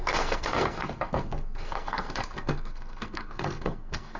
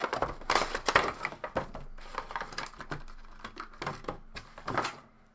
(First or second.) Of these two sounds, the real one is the second